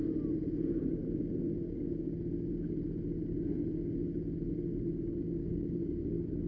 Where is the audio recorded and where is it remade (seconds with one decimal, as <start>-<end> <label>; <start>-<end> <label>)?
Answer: 0.0-4.9 recorded; 4.9-6.5 remade